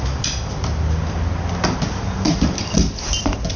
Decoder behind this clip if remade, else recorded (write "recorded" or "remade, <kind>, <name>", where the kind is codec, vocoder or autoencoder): recorded